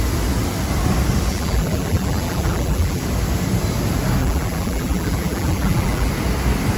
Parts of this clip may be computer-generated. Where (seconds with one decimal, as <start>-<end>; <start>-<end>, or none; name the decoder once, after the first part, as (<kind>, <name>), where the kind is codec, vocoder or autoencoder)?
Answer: 1.3-3.0 (vocoder, BigVGAN v2); 4.2-6.1